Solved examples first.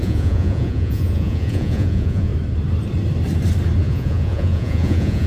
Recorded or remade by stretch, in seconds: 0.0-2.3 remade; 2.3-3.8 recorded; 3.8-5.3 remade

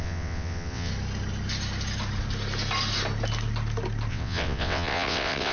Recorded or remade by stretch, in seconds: 0.0-0.9 remade; 0.9-4.1 recorded; 4.1-5.5 remade

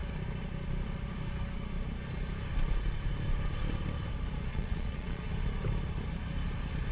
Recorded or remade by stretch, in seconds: 0.0-4.5 recorded; 4.5-5.3 remade; 5.3-6.9 recorded

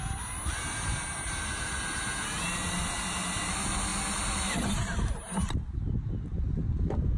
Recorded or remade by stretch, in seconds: 0.0-7.2 recorded

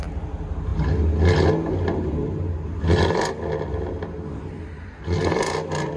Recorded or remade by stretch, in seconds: 0.0-6.0 recorded

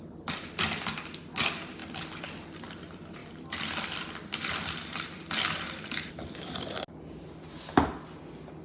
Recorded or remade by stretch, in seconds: 0.0-8.6 recorded